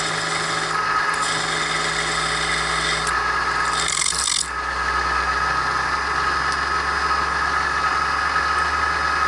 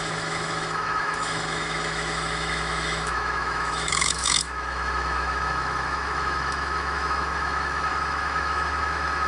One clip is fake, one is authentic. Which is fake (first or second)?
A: second